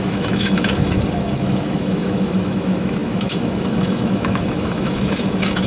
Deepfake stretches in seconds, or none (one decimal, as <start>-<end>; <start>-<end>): 0.0-5.7